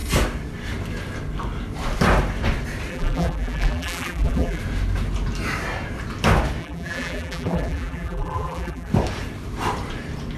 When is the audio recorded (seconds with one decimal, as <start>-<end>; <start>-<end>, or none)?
0.0-2.9; 4.6-6.6; 8.9-10.4